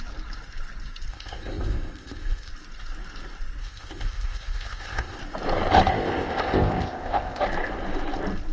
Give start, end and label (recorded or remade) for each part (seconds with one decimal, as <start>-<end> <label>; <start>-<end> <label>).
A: 0.0-1.1 recorded; 1.1-2.5 remade; 2.5-3.6 recorded; 3.6-5.2 remade; 5.2-5.9 recorded; 5.9-7.4 remade; 7.4-8.5 recorded